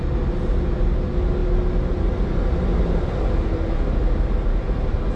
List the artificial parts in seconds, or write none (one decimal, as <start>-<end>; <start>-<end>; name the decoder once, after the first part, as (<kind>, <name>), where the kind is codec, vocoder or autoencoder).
none